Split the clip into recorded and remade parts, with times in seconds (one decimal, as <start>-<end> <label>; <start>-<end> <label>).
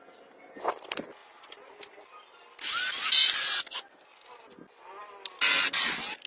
0.0-6.3 recorded